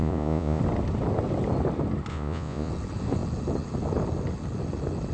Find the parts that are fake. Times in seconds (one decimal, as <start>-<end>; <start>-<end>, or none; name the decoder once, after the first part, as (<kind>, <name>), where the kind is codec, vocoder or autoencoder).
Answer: 0.0-0.6 (vocoder, Vocos); 2.1-2.7